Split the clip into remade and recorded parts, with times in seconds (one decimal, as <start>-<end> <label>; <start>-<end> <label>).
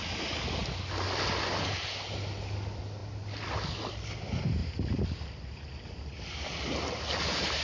0.0-7.6 recorded